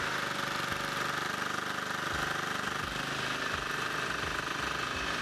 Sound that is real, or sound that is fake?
real